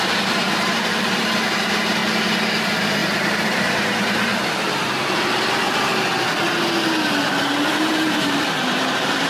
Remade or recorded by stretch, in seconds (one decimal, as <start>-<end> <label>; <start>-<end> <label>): 0.0-2.0 remade; 2.0-2.6 recorded; 2.6-5.9 remade; 5.9-7.7 recorded; 7.7-9.3 remade